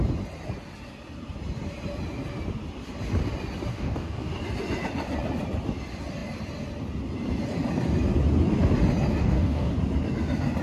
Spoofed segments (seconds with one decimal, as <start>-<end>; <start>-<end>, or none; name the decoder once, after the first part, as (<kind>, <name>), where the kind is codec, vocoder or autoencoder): 3.7-4.3 (codec, DAC); 9.2-9.7